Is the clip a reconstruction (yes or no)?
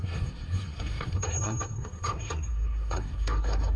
yes